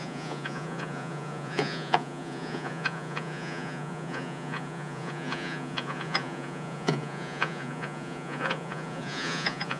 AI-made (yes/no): yes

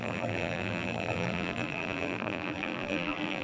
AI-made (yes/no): yes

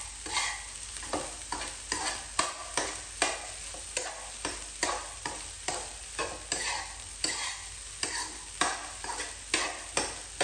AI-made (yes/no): no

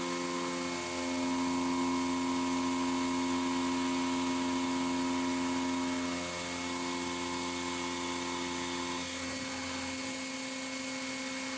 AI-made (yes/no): no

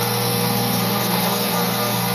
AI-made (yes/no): yes